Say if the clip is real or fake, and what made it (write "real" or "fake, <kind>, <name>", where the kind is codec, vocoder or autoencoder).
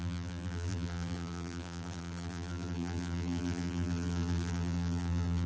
fake, vocoder, BigVGAN v2